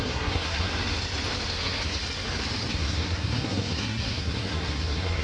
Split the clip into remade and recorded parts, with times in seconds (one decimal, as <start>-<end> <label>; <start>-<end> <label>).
0.0-0.7 remade; 0.7-1.5 recorded; 1.5-2.0 remade; 2.0-2.7 recorded; 2.7-5.2 remade